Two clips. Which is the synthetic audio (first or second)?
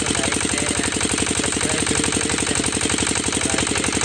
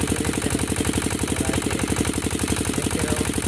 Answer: second